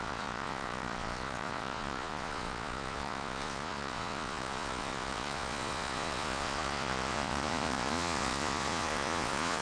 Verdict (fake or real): fake